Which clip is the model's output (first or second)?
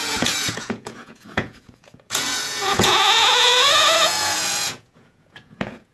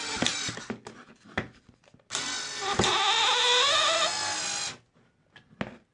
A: first